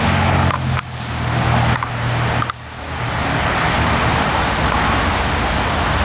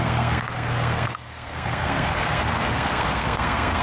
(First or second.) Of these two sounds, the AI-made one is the second